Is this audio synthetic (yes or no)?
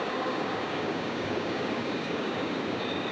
yes